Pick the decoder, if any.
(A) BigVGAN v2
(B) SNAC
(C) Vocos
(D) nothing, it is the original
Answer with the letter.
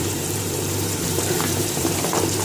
A